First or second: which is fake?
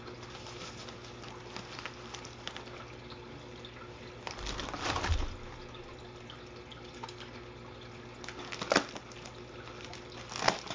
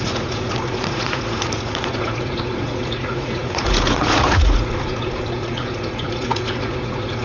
second